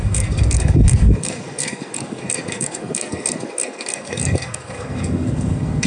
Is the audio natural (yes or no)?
no